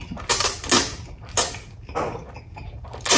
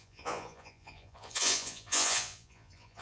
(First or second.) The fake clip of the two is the second